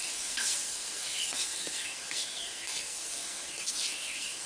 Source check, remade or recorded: remade